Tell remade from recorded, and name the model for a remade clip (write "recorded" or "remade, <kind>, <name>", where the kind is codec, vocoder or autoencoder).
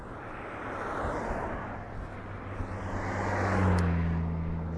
recorded